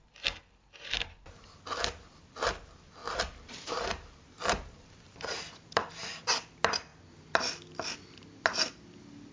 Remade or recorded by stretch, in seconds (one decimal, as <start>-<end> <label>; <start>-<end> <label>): 0.0-3.0 recorded; 3.0-5.5 remade; 5.5-9.3 recorded